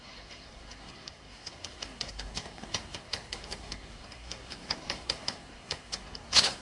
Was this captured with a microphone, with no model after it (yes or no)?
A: no